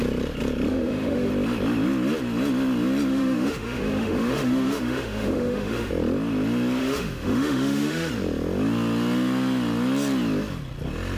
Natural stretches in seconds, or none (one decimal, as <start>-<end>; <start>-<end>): 0.0-0.7; 1.3-3.1; 5.9-6.8; 8.1-11.2